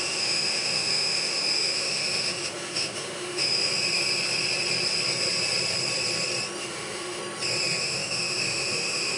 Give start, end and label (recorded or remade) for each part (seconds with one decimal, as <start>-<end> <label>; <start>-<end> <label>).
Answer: 0.0-3.7 remade; 3.7-6.6 recorded; 6.6-7.2 remade; 7.2-7.8 recorded; 7.8-9.2 remade